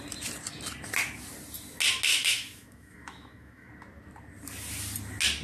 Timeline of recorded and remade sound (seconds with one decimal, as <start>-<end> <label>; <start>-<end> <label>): 0.0-2.1 recorded; 2.1-3.7 remade; 3.7-5.4 recorded